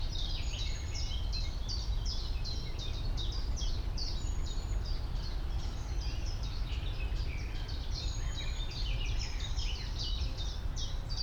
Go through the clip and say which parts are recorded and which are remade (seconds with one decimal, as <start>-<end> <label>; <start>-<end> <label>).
0.0-1.6 recorded; 1.6-5.6 remade; 5.6-7.1 recorded; 7.1-10.6 remade; 10.6-11.2 recorded